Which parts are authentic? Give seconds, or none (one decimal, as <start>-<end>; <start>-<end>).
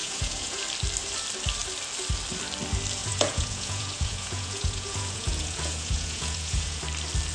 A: 0.6-3.0; 6.8-7.3